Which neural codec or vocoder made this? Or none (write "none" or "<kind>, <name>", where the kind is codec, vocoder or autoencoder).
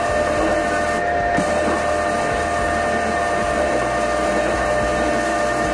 none